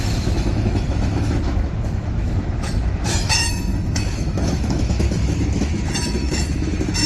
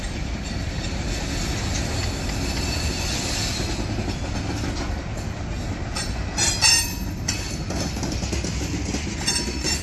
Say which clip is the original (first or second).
second